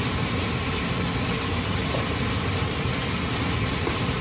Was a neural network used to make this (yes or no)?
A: no